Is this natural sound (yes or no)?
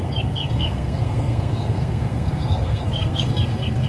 no